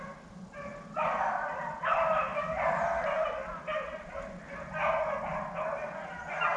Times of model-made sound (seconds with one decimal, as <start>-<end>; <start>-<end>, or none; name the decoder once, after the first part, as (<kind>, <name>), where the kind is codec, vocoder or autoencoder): none